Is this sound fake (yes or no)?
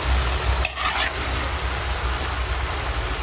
no